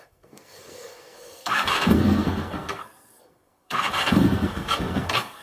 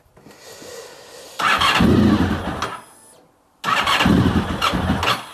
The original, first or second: second